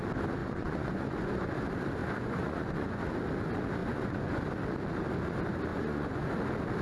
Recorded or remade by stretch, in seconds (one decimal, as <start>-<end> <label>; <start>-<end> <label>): 0.0-0.4 recorded; 0.4-1.5 remade; 1.5-2.0 recorded; 2.0-3.1 remade; 3.1-3.8 recorded; 3.8-4.4 remade; 4.4-5.7 recorded; 5.7-6.3 remade; 6.3-6.8 recorded